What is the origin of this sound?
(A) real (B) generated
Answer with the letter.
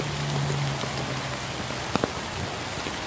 A